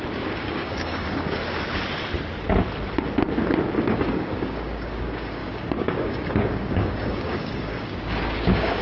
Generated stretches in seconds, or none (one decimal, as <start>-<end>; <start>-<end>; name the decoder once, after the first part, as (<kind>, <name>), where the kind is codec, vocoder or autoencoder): 0.0-1.4 (codec, DAC); 3.7-8.8